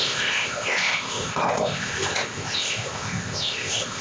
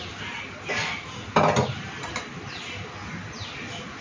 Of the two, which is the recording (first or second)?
second